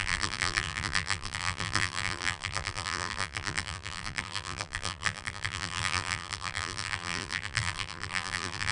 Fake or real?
fake